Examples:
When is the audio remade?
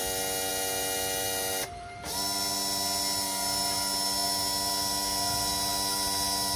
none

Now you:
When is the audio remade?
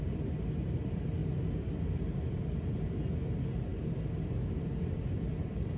0.0-3.7 (vocoder, BigVGAN v2); 4.8-5.8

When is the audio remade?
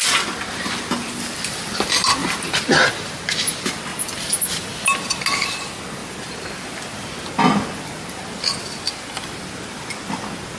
2.2-2.9 (vocoder, BigVGAN v2); 3.9-4.7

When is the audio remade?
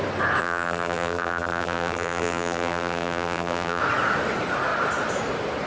0.4-3.8 (vocoder, BigVGAN v2)